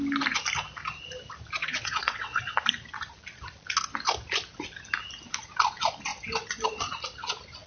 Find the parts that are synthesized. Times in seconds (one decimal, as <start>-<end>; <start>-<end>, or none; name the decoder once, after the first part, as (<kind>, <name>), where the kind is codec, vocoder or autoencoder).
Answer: 1.6-2.4 (vocoder, WaveNeXt)